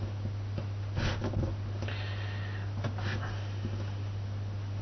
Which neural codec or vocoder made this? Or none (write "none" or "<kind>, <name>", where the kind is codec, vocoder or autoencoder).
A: none